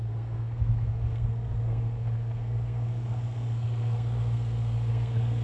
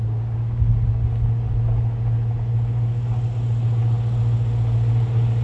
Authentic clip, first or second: second